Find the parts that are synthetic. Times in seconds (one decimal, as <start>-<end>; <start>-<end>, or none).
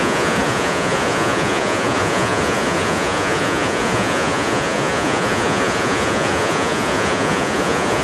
0.0-8.0